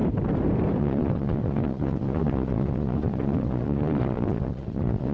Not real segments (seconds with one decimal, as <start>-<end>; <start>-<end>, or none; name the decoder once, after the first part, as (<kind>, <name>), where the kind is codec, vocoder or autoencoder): 0.8-5.1 (vocoder, Vocos)